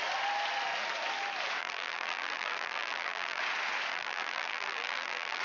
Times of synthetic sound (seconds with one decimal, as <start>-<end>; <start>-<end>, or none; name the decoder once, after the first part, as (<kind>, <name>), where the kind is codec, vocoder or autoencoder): 1.6-3.4 (vocoder, BigVGAN v2); 3.9-5.4